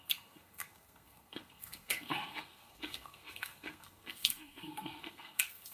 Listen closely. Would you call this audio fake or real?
fake